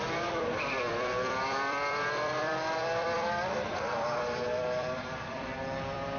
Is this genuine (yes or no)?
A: no